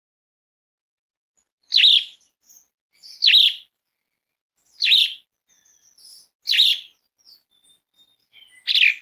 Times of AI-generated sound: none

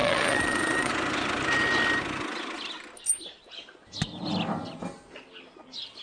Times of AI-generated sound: 0.0-0.9 (vocoder, Vocos)

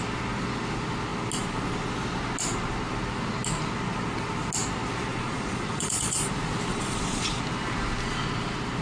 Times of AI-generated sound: 5.1-6.3 (vocoder, Vocos); 6.7-7.4

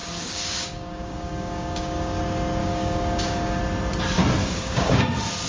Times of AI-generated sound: 0.0-2.2 (codec, DAC); 2.6-3.6; 4.4-5.0

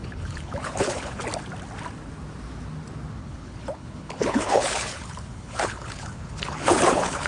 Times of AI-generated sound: 0.0-1.2 (codec, HILCodec); 3.2-7.3

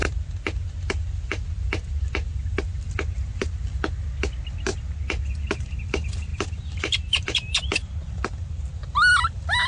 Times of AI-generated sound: 0.0-4.0 (vocoder, BigVGAN v2); 4.7-5.3; 6.3-7.7

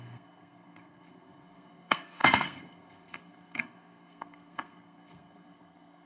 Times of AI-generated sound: 0.0-6.1 (codec, SNAC)

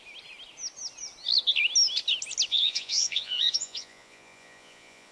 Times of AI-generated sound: 2.5-5.1 (vocoder, Vocos)